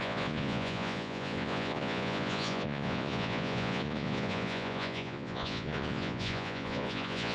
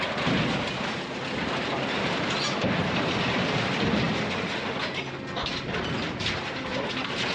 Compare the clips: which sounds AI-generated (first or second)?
first